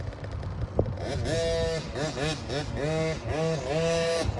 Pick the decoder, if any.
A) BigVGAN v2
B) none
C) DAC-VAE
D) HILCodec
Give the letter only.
B